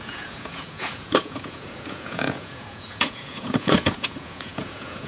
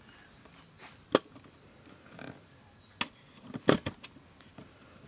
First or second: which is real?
second